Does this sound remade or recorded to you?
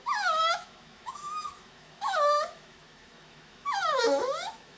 remade